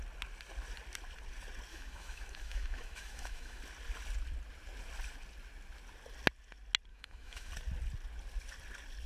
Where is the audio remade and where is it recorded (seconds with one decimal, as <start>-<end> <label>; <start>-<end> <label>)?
0.0-1.7 recorded; 1.7-3.6 remade; 3.6-6.9 recorded; 6.9-7.5 remade; 7.5-9.1 recorded